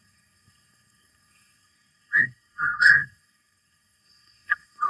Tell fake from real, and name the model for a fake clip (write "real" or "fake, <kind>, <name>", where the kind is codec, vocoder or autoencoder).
fake, codec, SNAC